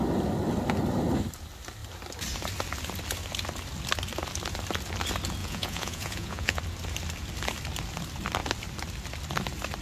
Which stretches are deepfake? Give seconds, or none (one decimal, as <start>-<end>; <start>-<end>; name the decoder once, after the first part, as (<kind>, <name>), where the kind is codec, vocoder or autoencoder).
5.4-6.6 (vocoder, Vocos)